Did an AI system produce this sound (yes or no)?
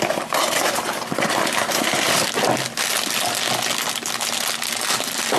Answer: no